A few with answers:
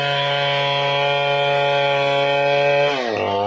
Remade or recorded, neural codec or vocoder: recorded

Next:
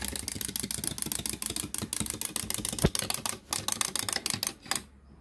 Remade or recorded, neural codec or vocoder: recorded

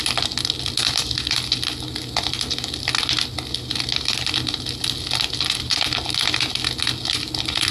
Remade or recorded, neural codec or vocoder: recorded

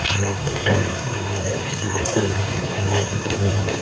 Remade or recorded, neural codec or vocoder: remade, codec, SNAC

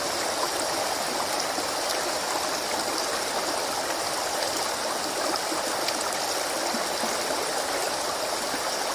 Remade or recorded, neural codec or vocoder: recorded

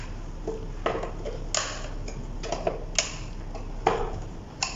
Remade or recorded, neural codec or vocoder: recorded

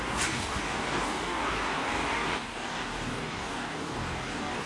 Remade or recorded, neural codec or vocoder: remade, codec, DAC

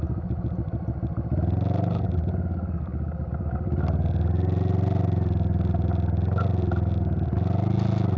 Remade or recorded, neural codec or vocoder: recorded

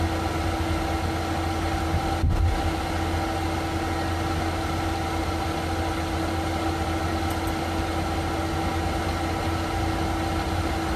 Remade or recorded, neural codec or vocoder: recorded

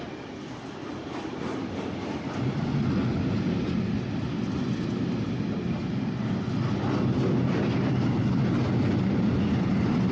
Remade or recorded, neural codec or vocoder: recorded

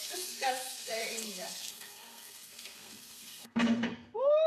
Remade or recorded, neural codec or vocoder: remade, codec, SNAC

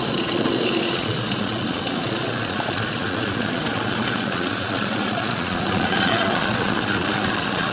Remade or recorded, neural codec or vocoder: remade, vocoder, Vocos